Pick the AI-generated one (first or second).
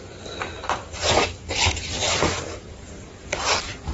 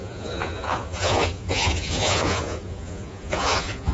second